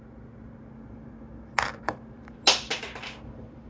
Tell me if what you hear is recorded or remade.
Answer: recorded